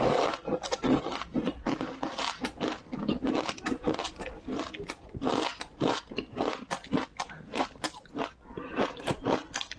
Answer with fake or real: real